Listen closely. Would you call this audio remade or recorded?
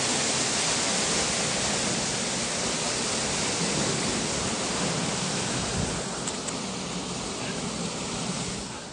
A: recorded